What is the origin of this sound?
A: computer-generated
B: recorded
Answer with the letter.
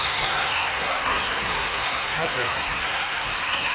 A